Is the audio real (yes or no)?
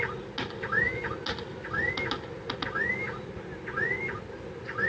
yes